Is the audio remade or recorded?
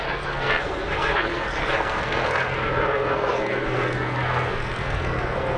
remade